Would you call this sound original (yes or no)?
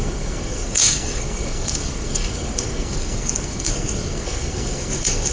no